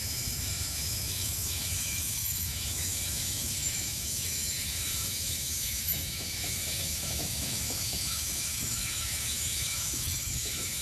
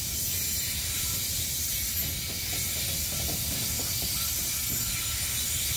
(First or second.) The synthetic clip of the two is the first